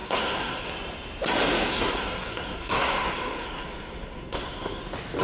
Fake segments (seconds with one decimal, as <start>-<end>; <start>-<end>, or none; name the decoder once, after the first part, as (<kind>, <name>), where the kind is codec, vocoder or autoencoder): 0.0-0.7 (codec, SNAC); 1.7-4.8